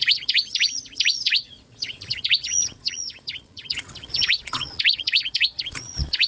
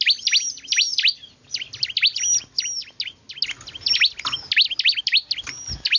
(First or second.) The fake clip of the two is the first